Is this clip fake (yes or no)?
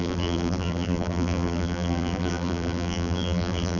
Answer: yes